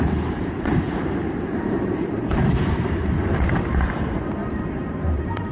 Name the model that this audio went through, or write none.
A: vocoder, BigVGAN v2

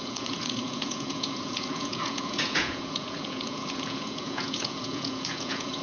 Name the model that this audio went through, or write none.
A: vocoder, Vocos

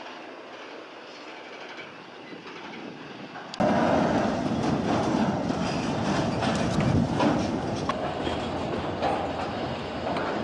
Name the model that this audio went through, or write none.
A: none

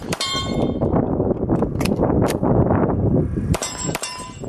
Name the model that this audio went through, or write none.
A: vocoder, BigVGAN v2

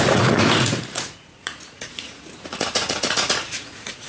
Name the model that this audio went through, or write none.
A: vocoder, Vocos